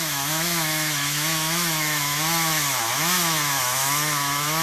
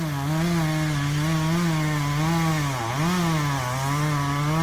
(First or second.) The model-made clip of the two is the first